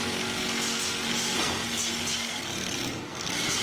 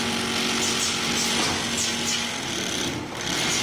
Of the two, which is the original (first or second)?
second